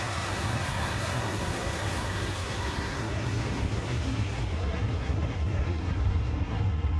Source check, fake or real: fake